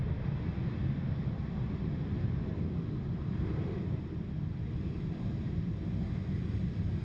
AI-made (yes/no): no